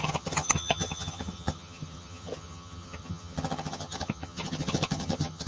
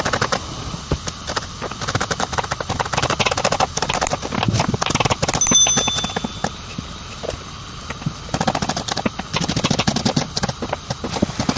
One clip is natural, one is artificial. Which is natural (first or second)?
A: second